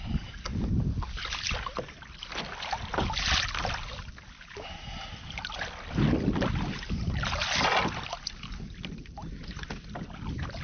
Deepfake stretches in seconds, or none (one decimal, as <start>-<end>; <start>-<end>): none